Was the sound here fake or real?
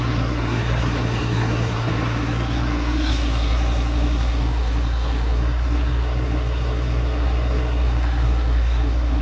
fake